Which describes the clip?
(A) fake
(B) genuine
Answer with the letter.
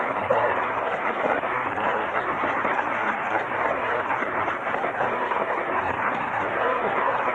A